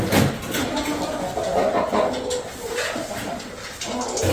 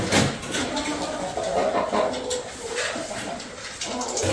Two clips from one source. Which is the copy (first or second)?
second